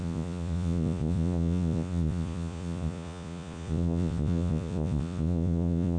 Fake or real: fake